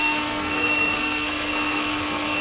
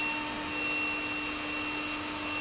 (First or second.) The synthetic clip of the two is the first